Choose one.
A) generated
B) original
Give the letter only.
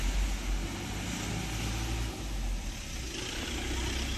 B